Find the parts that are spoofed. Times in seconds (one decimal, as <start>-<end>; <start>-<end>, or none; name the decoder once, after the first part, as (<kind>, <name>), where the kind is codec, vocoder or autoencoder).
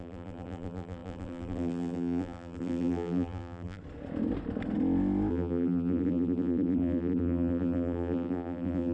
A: 0.0-3.8 (vocoder, BigVGAN v2); 5.3-8.9